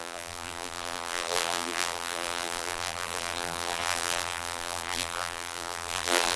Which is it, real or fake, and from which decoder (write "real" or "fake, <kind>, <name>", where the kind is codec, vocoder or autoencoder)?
fake, vocoder, BigVGAN v2